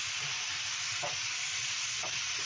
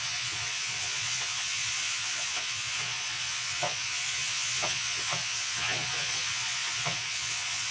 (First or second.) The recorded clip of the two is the first